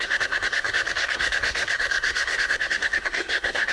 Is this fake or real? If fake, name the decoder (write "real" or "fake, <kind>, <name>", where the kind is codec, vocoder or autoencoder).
fake, codec, SNAC